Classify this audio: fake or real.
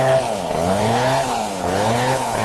fake